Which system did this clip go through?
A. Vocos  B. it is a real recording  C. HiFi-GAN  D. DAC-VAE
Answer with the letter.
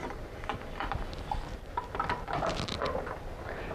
B